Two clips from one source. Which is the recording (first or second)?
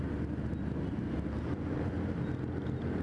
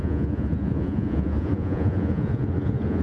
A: first